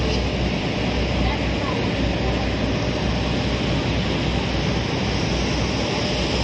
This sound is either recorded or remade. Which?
recorded